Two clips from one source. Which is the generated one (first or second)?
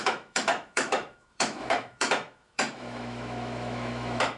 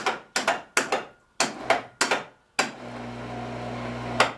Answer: first